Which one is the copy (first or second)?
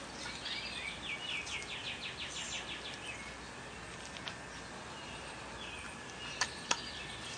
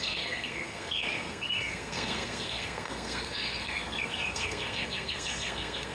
second